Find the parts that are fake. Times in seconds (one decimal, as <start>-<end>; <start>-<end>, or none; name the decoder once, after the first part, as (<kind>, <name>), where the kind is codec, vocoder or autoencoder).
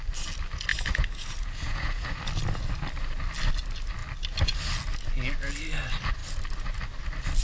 0.7-2.2 (vocoder, Vocos)